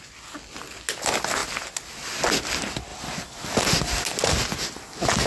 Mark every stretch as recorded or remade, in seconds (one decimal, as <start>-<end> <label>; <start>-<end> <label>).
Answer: 0.0-5.3 recorded